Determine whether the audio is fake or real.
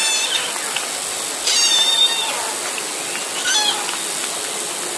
real